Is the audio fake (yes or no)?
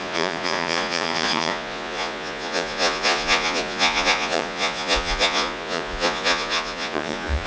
yes